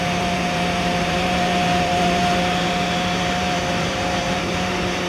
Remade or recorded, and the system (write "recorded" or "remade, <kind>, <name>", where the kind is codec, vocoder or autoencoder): remade, vocoder, BigVGAN v2